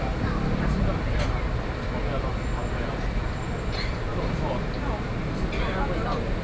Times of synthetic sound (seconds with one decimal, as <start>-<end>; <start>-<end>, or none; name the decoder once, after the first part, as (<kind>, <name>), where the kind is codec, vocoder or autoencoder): none